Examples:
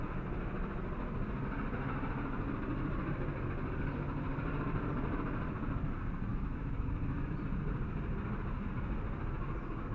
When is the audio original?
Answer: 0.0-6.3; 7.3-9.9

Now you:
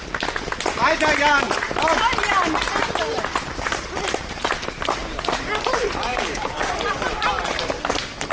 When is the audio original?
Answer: 0.0-6.1; 6.7-8.3

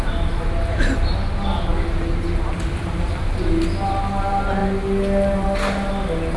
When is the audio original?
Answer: 0.0-6.4

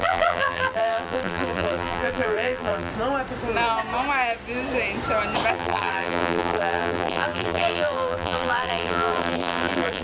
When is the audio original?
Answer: 2.9-5.5

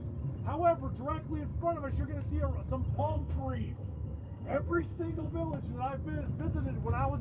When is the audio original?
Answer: 0.0-2.9; 5.3-7.2